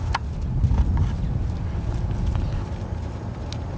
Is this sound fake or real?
real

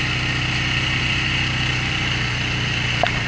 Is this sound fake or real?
real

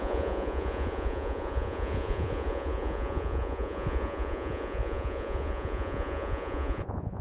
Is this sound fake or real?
fake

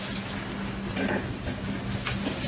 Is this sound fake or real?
real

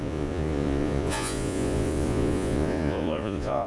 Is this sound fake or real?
fake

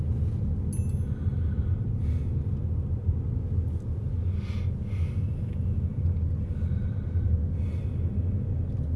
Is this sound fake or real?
real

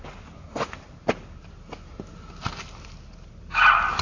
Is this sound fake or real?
real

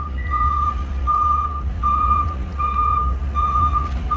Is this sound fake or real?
fake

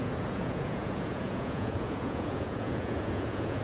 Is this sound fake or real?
fake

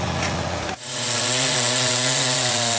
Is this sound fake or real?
fake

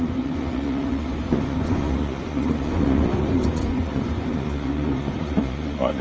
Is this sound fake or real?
fake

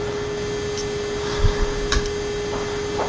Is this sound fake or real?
real